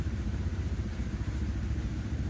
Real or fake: fake